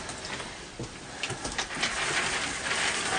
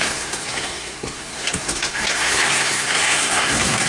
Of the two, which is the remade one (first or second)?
second